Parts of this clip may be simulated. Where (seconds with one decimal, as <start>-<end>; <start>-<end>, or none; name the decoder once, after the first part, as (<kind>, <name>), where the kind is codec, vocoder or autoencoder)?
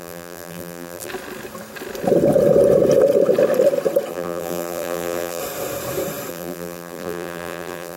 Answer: 0.0-1.1 (vocoder, BigVGAN v2); 4.1-5.4; 6.3-8.0